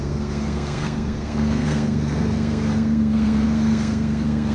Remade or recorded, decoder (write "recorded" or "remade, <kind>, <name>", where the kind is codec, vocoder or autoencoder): remade, codec, SNAC